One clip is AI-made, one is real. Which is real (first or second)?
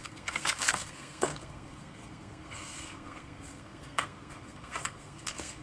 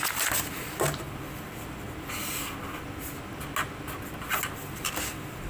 second